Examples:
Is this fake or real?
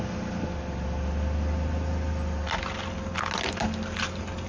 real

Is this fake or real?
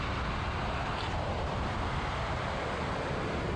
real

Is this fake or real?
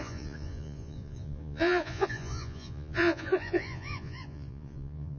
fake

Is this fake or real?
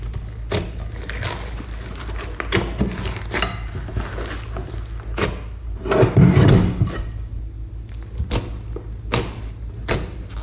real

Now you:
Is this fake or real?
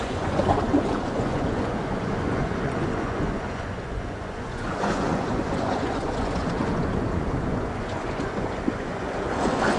fake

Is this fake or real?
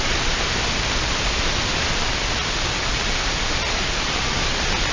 real